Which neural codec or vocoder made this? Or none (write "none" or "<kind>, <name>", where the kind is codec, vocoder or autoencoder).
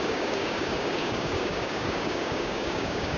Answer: codec, DAC